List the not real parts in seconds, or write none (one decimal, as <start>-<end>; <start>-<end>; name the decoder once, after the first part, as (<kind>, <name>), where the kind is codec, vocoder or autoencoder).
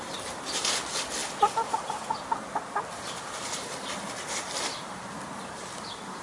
none